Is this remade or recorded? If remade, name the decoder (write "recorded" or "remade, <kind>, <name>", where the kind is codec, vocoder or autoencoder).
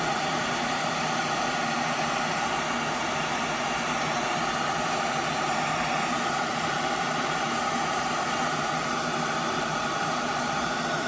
remade, vocoder, BigVGAN v2